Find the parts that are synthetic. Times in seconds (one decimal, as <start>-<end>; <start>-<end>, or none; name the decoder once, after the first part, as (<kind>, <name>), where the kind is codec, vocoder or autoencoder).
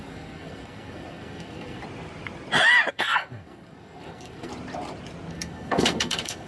0.0-1.8 (codec, SNAC); 2.9-4.5; 5.3-6.5